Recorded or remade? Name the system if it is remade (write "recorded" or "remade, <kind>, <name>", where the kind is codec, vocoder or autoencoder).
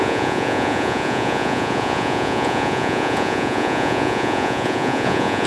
remade, vocoder, Vocos